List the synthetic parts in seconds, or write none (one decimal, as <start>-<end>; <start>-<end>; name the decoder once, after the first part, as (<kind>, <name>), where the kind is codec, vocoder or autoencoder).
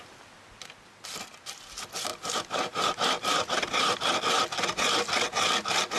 2.1-4.2 (vocoder, BigVGAN v2)